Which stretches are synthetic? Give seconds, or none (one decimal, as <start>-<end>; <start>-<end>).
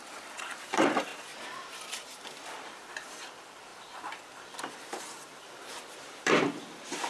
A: 0.0-1.1; 1.9-7.1